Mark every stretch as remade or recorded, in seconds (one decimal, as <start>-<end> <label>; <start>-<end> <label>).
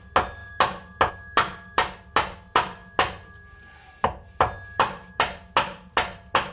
0.0-6.5 recorded